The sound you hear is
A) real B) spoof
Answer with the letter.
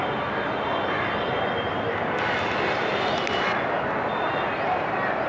A